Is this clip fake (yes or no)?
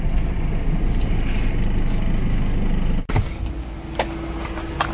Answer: no